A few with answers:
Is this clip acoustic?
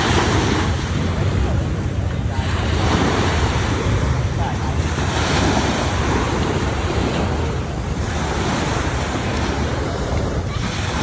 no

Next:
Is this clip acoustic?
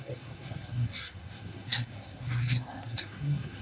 no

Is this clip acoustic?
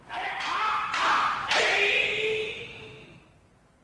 yes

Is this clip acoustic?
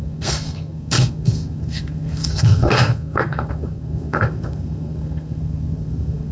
no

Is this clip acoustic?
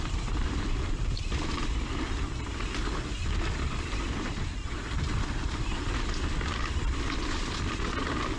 yes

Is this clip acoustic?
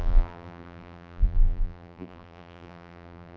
no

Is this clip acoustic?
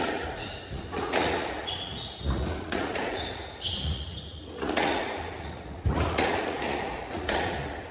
no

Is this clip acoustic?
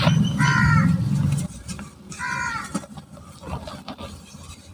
yes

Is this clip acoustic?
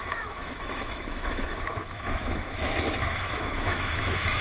no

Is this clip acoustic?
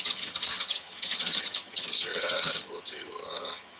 no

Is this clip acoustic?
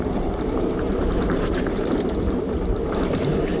no